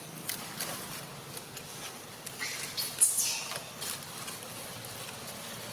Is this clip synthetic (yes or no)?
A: no